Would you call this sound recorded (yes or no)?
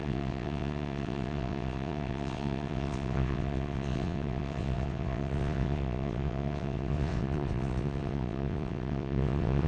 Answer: no